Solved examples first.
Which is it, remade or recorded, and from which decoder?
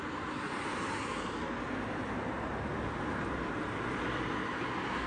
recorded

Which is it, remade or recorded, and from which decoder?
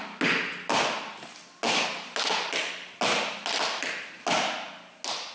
recorded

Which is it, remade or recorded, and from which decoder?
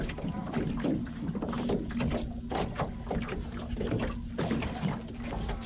recorded